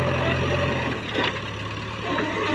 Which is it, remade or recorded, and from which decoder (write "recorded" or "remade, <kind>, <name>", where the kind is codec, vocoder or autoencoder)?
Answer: recorded